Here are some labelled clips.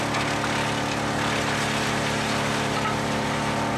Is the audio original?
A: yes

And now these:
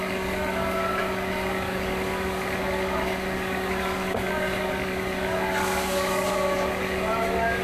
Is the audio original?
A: no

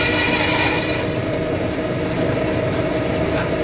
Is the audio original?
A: yes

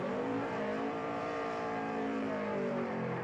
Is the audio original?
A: no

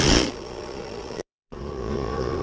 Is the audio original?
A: no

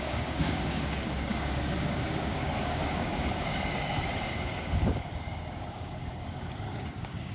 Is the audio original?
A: no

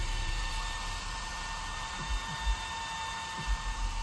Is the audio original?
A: no